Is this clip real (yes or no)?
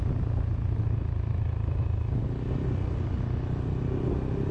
yes